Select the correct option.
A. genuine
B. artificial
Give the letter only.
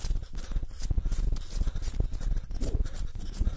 A